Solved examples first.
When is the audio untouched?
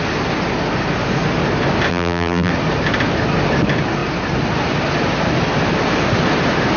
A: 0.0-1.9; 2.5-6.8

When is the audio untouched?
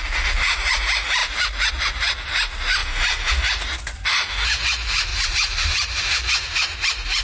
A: 0.0-1.2; 1.7-2.8; 3.3-5.1; 6.0-7.2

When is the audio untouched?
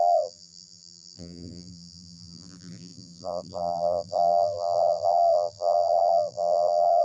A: none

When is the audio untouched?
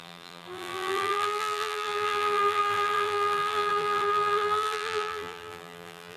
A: none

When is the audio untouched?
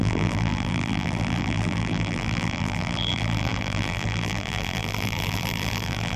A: none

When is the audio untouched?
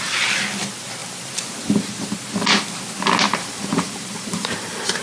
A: 0.0-3.3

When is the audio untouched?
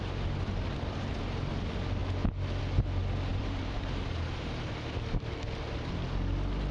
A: 0.0-3.3; 4.7-6.7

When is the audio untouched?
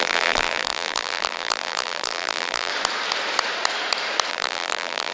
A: 2.7-4.3